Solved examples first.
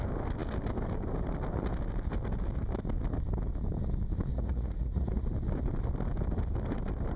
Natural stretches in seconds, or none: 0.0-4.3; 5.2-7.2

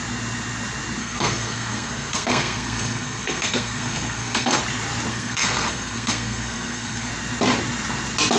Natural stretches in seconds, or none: 0.0-1.0; 4.6-5.1; 7.1-8.4

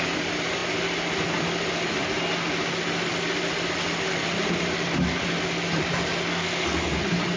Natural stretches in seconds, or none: 0.0-6.3; 7.0-7.4

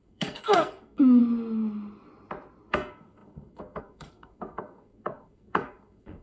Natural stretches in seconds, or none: 1.2-2.7

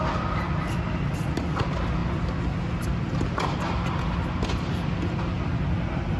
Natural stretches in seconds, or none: 0.0-6.2

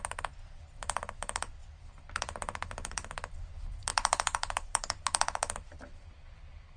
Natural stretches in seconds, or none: 1.6-2.2

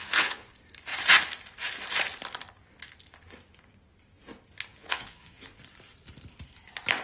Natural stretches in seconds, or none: 0.5-4.7; 5.6-7.0